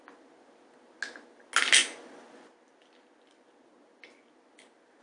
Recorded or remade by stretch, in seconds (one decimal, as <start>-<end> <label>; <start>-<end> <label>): 0.0-5.0 recorded